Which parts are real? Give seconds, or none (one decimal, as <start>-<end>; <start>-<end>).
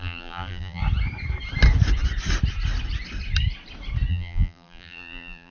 0.8-4.1